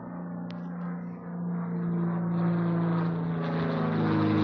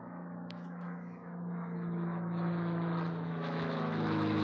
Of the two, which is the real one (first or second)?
first